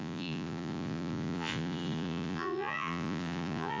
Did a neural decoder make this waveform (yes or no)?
yes